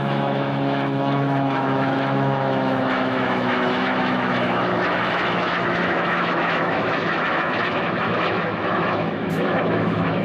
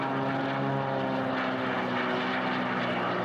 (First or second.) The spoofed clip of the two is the first